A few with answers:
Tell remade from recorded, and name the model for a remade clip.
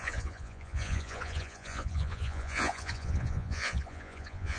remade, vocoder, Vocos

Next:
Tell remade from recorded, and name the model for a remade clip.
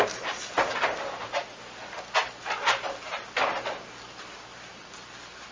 recorded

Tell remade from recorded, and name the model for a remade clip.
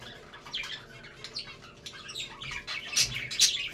recorded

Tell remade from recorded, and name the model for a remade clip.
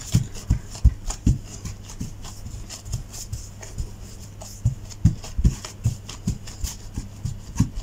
recorded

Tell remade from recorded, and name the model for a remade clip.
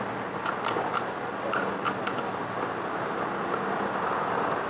recorded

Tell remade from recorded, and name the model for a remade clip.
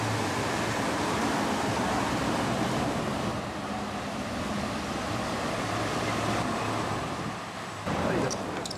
recorded